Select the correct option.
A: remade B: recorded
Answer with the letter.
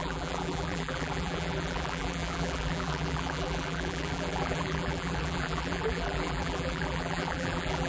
A